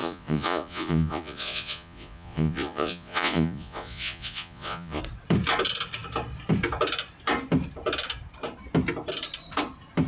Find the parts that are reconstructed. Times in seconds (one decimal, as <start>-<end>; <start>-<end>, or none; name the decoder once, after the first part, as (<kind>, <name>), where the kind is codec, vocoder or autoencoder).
0.0-5.0 (vocoder, Vocos)